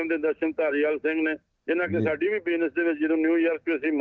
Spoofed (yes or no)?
no